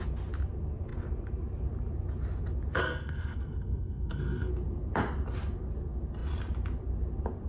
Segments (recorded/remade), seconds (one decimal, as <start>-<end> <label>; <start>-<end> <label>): 0.0-2.8 recorded; 2.8-4.5 remade; 4.5-7.5 recorded